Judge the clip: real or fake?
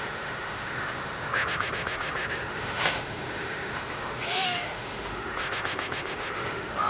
fake